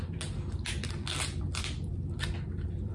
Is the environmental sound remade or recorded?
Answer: recorded